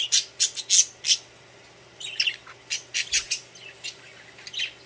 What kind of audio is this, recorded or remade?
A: recorded